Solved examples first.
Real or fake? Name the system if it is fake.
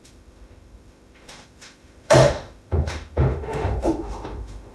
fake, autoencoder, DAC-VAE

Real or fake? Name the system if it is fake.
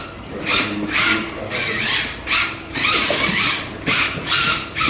real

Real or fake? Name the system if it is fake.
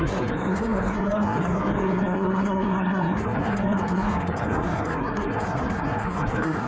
fake, codec, SNAC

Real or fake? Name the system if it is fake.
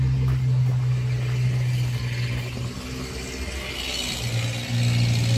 real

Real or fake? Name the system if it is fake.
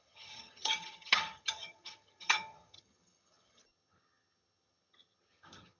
fake, vocoder, HiFi-GAN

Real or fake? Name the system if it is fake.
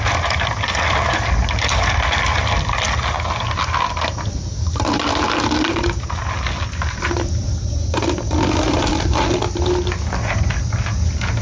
real